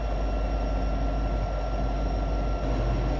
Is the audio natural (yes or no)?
yes